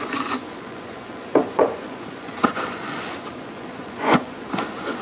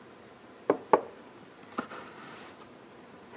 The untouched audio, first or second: second